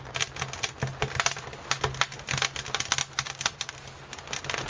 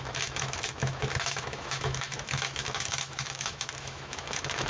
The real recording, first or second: first